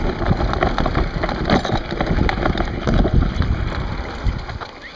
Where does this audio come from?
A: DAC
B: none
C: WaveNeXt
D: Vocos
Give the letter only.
B